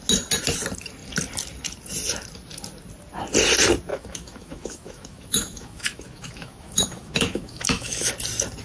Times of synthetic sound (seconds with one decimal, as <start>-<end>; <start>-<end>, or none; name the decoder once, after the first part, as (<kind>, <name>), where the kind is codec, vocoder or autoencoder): 3.9-8.1 (autoencoder, DAC-VAE)